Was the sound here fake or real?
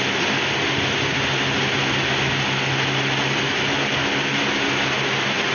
real